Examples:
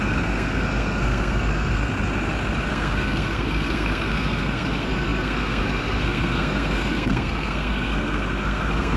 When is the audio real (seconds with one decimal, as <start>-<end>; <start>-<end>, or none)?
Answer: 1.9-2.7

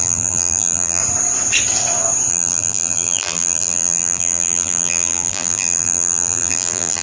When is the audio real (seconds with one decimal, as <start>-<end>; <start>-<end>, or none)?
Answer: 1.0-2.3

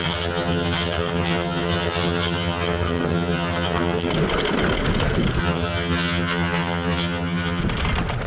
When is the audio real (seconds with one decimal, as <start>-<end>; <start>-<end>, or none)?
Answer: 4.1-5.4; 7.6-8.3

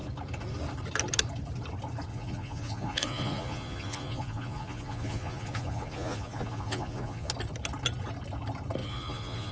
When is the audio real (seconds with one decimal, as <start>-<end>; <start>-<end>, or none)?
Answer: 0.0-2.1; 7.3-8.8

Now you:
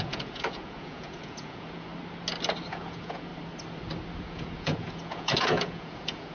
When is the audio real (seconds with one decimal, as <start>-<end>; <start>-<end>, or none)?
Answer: 1.9-2.7; 3.3-4.2